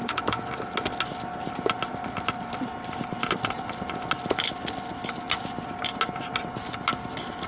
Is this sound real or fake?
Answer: real